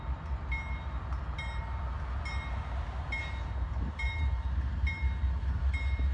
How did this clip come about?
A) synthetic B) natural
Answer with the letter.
B